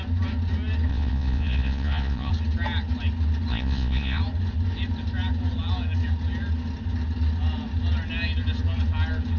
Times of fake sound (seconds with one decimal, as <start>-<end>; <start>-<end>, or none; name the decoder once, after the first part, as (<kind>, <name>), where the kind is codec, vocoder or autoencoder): 0.9-2.3 (vocoder, Vocos); 3.5-4.2